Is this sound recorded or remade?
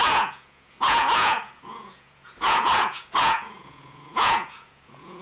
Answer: remade